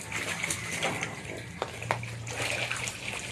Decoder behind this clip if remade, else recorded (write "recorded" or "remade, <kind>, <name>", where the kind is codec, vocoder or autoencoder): recorded